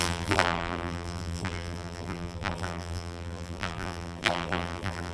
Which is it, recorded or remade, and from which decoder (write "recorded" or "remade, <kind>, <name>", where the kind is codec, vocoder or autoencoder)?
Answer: remade, vocoder, BigVGAN v2